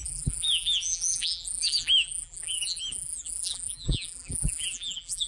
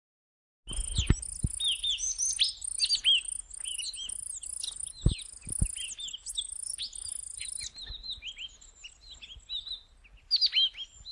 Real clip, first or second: second